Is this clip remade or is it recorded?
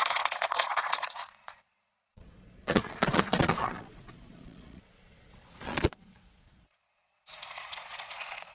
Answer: remade